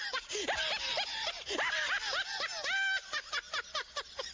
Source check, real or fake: real